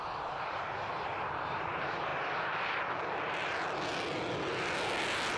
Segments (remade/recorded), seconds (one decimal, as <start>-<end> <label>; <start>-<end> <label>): 0.0-2.1 remade; 2.1-5.4 recorded

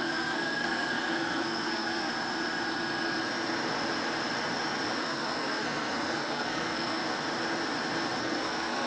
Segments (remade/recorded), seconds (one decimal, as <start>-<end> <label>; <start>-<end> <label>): 0.0-2.1 remade; 2.1-5.0 recorded; 5.0-7.0 remade; 7.0-8.2 recorded; 8.2-8.9 remade

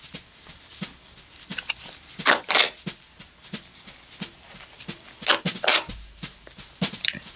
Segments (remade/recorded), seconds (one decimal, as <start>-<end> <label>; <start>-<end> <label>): 0.0-7.4 recorded

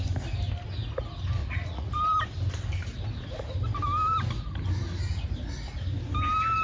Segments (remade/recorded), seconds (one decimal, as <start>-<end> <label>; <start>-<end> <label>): 0.0-1.4 recorded; 1.4-1.9 remade; 1.9-6.6 recorded

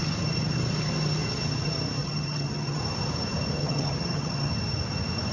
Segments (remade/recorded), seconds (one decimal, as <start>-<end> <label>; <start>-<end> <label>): 0.0-2.0 recorded; 2.0-2.8 remade; 2.8-3.6 recorded; 3.6-4.5 remade; 4.5-5.3 recorded